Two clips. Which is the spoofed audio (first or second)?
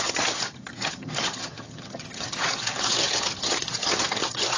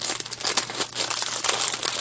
first